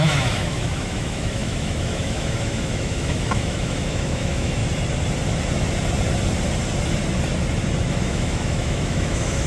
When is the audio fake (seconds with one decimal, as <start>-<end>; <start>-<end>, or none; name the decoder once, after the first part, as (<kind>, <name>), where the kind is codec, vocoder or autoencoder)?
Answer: 0.0-4.6 (autoencoder, DAC-VAE); 7.9-9.5